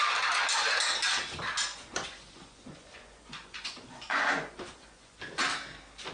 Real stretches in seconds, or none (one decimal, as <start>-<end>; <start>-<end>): 0.0-1.7; 5.2-6.1